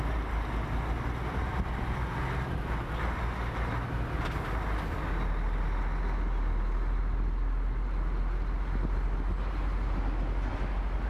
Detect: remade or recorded recorded